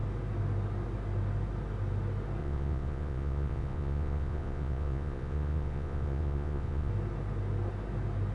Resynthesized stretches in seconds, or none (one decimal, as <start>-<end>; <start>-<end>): 2.4-6.9